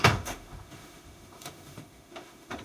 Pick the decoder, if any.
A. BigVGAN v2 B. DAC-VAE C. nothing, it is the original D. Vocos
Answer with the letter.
B